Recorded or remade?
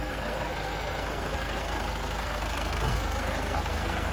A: remade